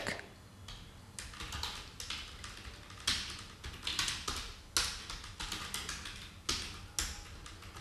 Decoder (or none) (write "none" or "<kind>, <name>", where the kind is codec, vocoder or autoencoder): none